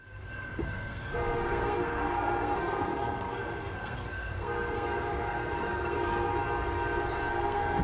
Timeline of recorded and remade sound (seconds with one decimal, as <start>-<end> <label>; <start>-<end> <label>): 0.0-6.3 remade; 6.3-7.3 recorded; 7.3-7.8 remade